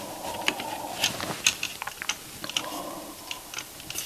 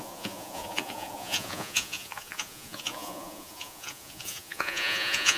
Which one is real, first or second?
first